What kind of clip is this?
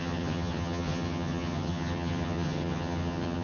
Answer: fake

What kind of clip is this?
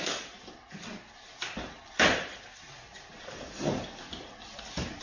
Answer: real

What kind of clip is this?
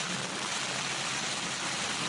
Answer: real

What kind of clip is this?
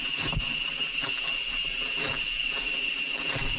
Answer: real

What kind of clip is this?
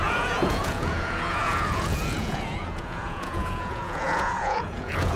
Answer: fake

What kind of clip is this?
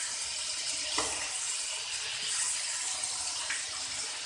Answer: real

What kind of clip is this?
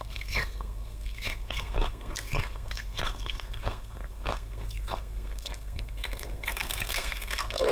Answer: fake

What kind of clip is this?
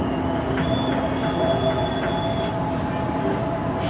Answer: real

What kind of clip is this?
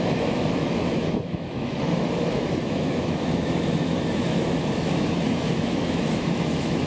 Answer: fake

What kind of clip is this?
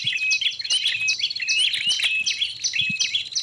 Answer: real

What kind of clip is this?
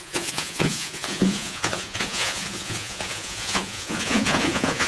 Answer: fake